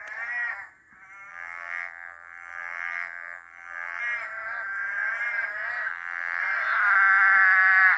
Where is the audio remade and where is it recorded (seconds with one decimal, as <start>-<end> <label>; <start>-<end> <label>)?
0.0-1.3 recorded; 1.3-4.0 remade; 4.0-5.9 recorded; 5.9-6.4 remade; 6.4-8.0 recorded